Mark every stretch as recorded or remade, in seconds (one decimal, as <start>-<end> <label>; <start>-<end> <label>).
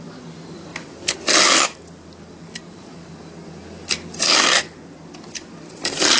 0.0-6.2 recorded